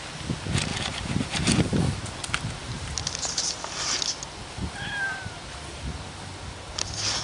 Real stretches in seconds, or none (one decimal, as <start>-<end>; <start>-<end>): 0.0-0.7; 1.8-2.6; 3.7-7.2